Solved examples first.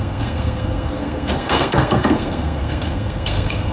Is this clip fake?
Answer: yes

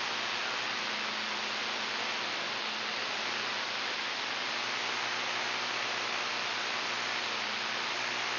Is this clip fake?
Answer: no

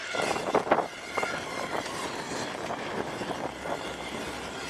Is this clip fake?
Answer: no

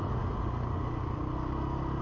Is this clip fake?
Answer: no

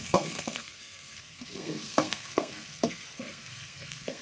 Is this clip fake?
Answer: yes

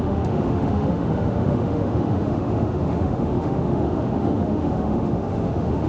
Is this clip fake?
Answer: yes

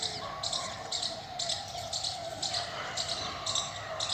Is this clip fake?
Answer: no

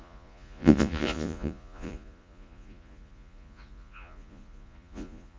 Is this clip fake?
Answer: yes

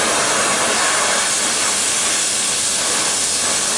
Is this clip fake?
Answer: no